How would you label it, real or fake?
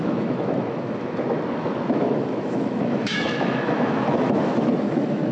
fake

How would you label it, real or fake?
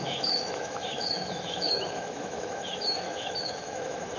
fake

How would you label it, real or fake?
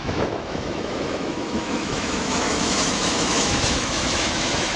fake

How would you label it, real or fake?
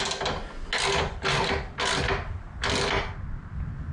real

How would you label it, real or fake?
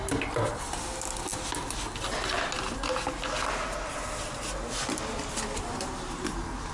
real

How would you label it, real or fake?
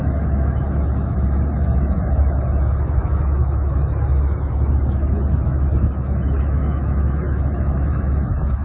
fake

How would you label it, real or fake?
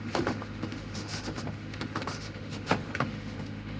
fake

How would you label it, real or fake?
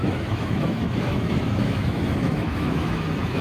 fake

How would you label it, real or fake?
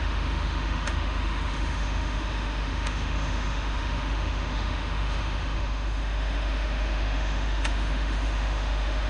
fake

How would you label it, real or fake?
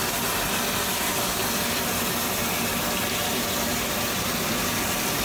real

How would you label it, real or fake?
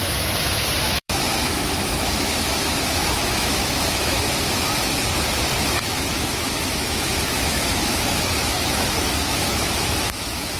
fake